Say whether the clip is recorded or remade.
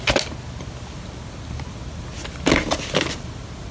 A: recorded